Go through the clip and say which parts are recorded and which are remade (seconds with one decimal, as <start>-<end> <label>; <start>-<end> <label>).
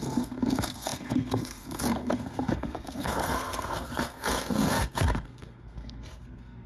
0.0-6.7 remade